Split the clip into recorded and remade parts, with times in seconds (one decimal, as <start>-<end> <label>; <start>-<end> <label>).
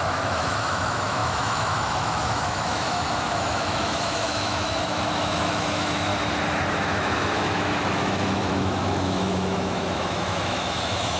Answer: 0.0-6.1 remade; 6.1-6.7 recorded; 6.7-11.2 remade